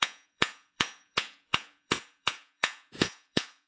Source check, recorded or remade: remade